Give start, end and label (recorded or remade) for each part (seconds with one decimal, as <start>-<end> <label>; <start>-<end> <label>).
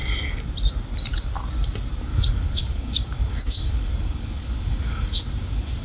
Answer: 0.0-2.1 recorded; 2.1-5.2 remade; 5.2-5.8 recorded